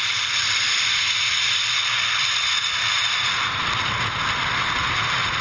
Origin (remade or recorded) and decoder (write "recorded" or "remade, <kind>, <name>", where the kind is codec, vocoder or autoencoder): recorded